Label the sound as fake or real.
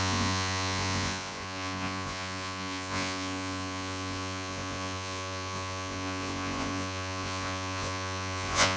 fake